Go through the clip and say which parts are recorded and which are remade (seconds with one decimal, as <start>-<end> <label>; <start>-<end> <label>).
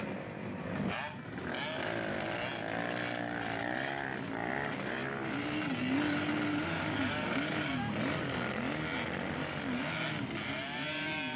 0.0-6.5 recorded; 6.5-7.7 remade; 7.7-11.4 recorded